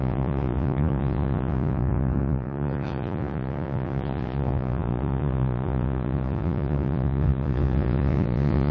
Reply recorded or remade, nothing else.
remade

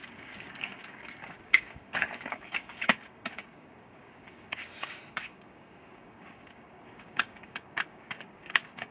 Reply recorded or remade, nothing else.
remade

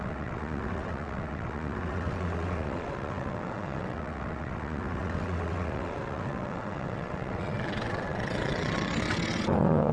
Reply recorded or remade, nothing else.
remade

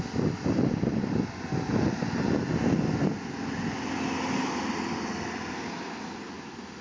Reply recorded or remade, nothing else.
recorded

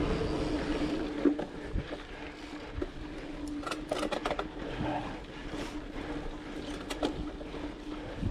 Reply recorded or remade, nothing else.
recorded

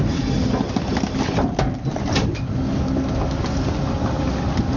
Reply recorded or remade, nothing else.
recorded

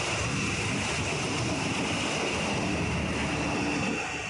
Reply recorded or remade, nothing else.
recorded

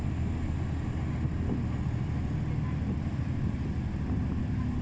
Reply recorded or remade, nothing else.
recorded